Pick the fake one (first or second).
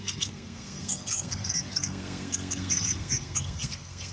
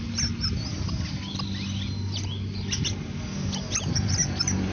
first